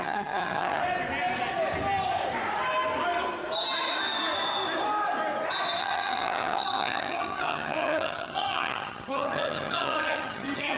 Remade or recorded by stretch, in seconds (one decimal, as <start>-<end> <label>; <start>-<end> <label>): 0.0-0.8 remade; 0.8-5.8 recorded; 5.8-10.8 remade